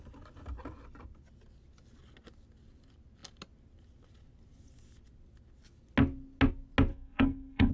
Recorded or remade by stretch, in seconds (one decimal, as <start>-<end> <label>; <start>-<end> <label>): 0.0-6.9 recorded; 6.9-7.7 remade